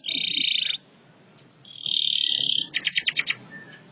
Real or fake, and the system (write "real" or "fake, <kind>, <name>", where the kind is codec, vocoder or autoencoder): real